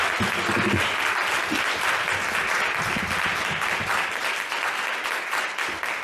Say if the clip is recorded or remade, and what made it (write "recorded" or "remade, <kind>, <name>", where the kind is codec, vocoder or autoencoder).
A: recorded